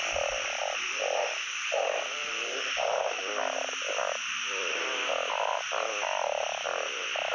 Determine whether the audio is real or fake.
real